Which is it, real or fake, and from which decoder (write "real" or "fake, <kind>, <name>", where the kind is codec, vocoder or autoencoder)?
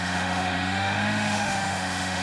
fake, autoencoder, DAC-VAE